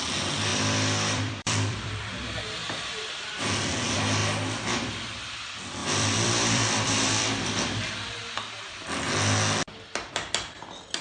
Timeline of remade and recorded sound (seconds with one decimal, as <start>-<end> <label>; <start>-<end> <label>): 0.0-0.5 recorded; 0.5-2.0 remade; 2.0-2.6 recorded; 2.6-3.4 remade; 3.4-5.8 recorded; 5.8-8.2 remade; 8.2-11.0 recorded